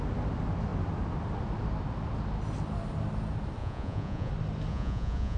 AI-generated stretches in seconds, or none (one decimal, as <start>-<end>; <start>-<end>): 3.6-4.3; 4.7-5.4

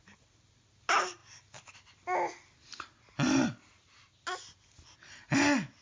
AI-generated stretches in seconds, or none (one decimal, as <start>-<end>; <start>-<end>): none

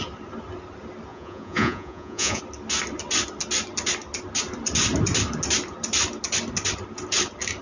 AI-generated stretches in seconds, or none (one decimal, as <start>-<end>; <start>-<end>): 1.1-2.4